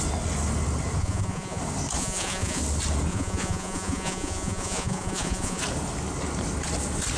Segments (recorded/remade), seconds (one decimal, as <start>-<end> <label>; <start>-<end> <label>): 0.0-1.0 recorded; 1.0-1.6 remade; 1.6-2.0 recorded; 2.0-2.6 remade; 2.6-3.1 recorded; 3.1-5.6 remade; 5.6-7.2 recorded